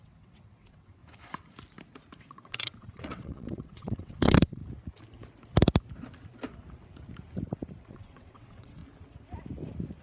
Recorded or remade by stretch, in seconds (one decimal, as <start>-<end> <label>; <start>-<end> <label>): 0.0-1.0 remade; 1.0-2.2 recorded; 2.2-4.6 remade; 4.6-7.9 recorded; 7.9-8.8 remade; 8.8-10.0 recorded